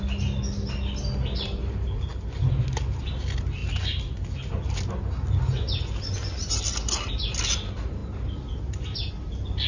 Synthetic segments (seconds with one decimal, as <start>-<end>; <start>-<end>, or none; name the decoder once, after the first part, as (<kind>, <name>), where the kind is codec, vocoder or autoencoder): none